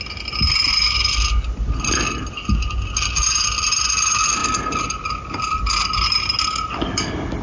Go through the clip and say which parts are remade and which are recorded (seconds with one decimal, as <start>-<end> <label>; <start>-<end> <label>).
0.0-7.4 recorded